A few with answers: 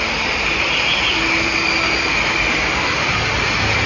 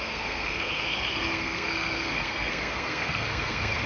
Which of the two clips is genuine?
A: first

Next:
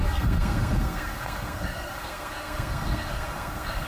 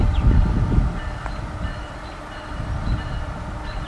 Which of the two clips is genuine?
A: second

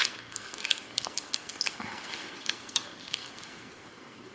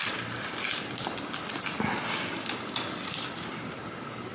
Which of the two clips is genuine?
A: second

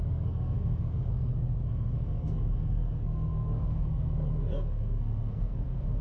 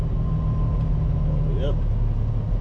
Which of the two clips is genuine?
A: second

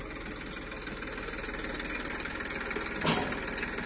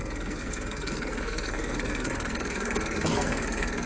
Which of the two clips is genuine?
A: first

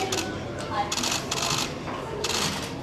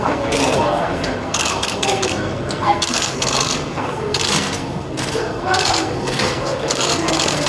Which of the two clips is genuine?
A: first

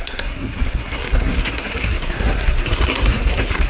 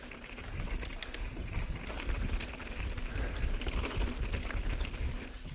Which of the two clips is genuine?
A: second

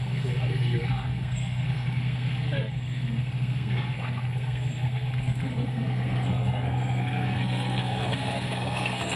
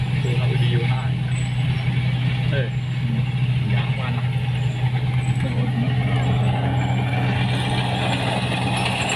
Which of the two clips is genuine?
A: second